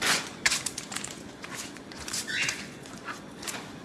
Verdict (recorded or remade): remade